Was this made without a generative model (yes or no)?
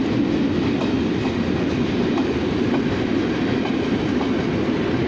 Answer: yes